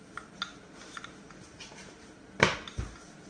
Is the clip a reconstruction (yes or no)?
no